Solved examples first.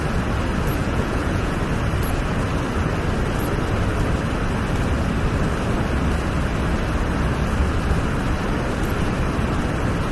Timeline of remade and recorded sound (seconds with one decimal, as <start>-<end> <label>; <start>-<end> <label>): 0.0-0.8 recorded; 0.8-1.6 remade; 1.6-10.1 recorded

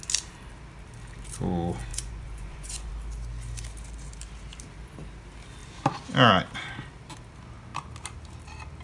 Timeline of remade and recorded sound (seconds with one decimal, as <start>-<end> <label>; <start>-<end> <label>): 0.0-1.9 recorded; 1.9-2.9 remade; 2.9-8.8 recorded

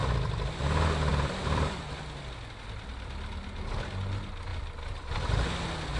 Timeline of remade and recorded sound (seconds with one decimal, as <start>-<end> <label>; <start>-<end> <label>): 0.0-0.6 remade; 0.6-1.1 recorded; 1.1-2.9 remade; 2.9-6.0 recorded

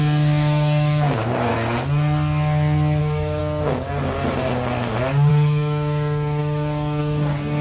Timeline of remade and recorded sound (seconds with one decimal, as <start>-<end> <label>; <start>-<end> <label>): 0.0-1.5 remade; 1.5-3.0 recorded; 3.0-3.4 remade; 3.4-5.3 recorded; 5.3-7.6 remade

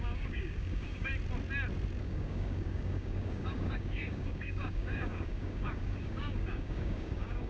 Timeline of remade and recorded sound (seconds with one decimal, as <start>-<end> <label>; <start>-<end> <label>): 0.0-1.1 remade; 1.1-2.0 recorded; 2.0-7.5 remade

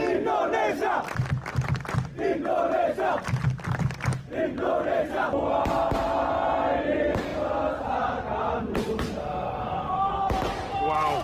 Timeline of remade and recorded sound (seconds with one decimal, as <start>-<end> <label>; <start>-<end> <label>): 0.0-9.2 recorded; 9.2-10.1 remade; 10.1-11.2 recorded